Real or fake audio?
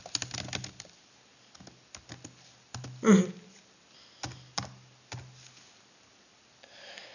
real